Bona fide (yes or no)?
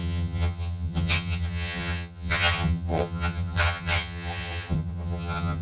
no